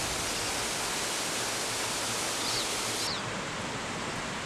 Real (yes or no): yes